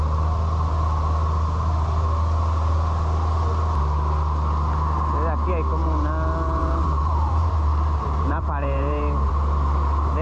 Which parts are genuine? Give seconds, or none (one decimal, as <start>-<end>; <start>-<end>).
0.0-6.6; 9.3-10.2